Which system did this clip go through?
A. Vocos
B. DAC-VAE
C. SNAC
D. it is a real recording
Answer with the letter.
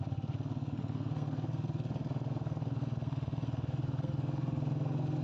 C